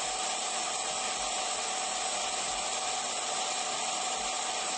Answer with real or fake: real